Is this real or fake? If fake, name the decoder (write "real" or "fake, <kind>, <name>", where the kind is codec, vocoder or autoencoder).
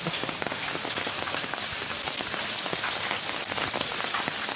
real